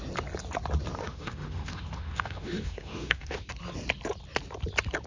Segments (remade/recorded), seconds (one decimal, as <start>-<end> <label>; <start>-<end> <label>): 0.0-1.0 recorded; 1.0-3.5 remade; 3.5-5.1 recorded